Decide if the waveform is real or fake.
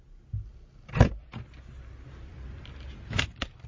real